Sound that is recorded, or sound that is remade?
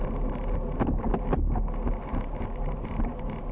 recorded